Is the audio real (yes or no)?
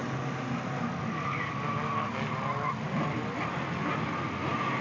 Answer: yes